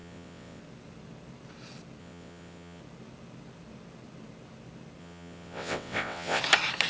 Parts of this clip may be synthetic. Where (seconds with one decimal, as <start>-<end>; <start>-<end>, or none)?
0.0-0.6; 2.0-2.8; 5.0-6.4

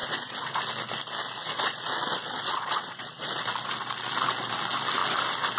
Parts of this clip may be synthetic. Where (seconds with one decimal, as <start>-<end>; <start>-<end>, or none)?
0.0-0.6; 1.4-3.3

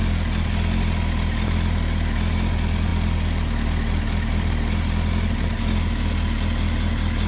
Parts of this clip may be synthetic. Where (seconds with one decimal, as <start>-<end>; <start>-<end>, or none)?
none

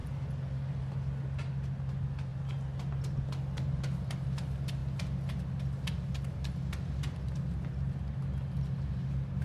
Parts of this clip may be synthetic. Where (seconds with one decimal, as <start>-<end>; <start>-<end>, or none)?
none

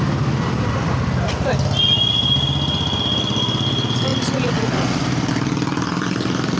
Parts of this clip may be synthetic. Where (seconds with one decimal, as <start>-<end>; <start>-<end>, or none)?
none